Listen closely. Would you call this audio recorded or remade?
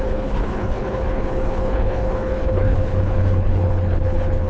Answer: remade